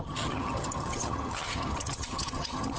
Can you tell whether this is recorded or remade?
remade